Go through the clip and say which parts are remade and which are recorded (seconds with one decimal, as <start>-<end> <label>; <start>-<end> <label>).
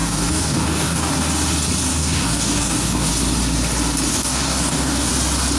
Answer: 0.0-1.1 remade; 1.1-1.9 recorded; 1.9-3.1 remade; 3.1-4.1 recorded; 4.1-5.1 remade; 5.1-5.6 recorded